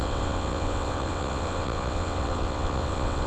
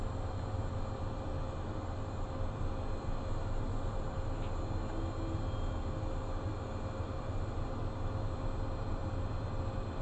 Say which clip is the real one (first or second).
second